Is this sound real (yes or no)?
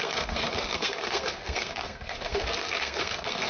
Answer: no